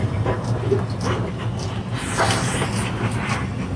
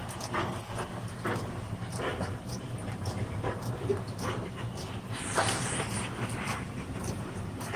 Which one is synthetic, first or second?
second